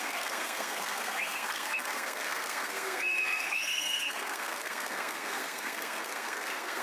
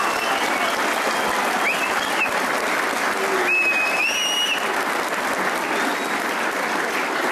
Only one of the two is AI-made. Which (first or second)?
first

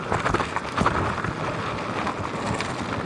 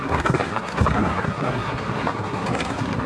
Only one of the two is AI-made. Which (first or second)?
second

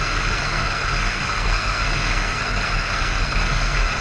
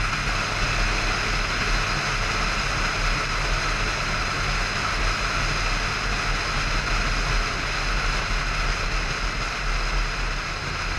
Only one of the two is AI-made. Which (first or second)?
first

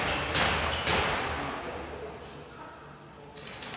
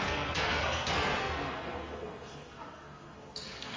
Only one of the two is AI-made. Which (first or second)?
second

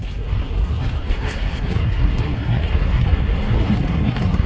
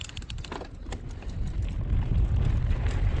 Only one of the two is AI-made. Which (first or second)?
first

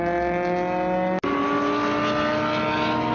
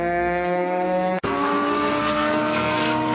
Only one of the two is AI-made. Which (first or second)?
second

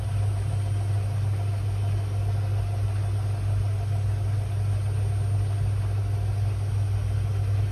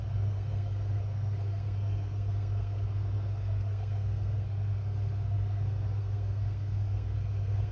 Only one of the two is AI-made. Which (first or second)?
second